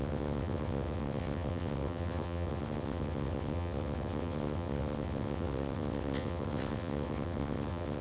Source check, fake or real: fake